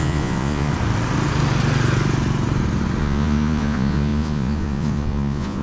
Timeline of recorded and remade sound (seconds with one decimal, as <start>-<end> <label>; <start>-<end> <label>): 0.0-0.7 remade; 0.7-3.0 recorded; 3.0-5.6 remade